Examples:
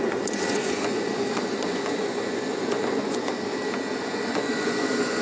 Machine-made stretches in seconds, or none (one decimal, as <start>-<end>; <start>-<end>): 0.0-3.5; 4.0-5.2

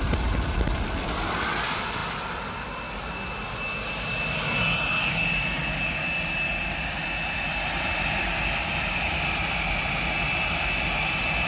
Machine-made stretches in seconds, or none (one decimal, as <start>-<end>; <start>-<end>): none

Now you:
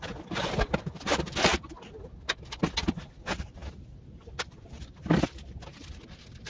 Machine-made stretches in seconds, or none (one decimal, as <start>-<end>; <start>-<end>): none

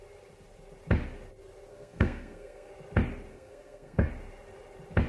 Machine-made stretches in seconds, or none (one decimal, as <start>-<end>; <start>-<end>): 1.7-2.7; 3.3-4.1

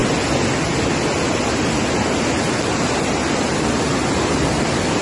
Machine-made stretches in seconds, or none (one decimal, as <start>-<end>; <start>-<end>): none

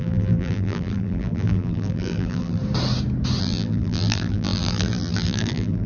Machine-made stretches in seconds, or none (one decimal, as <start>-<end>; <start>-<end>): 0.0-2.6; 3.4-5.9

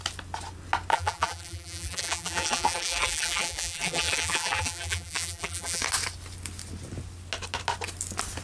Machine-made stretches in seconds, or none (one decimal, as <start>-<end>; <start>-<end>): 0.9-5.8

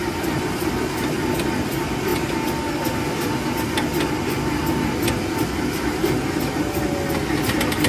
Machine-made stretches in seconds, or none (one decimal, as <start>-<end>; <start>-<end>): none